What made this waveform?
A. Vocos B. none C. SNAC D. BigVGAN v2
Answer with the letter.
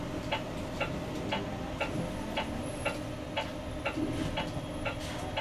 B